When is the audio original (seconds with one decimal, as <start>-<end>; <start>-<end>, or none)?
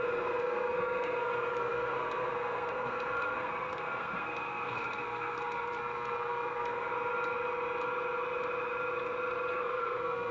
6.9-9.5